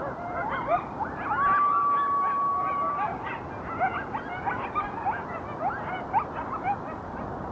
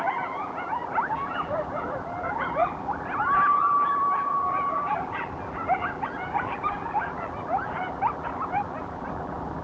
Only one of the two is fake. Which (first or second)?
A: second